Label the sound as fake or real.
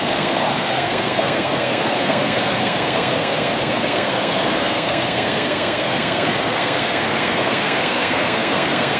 fake